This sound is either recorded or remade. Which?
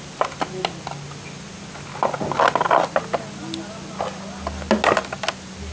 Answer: recorded